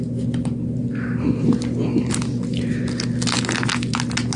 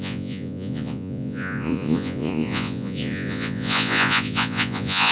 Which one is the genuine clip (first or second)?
first